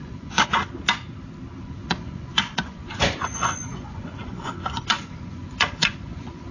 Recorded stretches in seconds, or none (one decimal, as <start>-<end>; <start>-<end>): 0.6-1.6